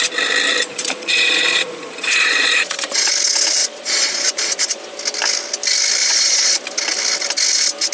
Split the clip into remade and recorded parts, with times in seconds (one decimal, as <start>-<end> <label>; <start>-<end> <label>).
0.0-0.7 recorded; 0.7-3.1 remade; 3.1-3.6 recorded; 3.6-4.8 remade; 4.8-6.0 recorded; 6.0-6.6 remade; 6.6-7.9 recorded